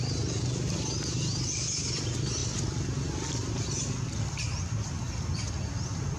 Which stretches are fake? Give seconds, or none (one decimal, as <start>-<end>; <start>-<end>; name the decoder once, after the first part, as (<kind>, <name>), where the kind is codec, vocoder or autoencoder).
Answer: none